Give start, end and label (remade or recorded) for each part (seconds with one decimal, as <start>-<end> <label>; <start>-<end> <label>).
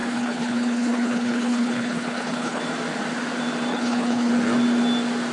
0.0-2.6 remade; 2.6-3.7 recorded; 3.7-4.3 remade; 4.3-5.3 recorded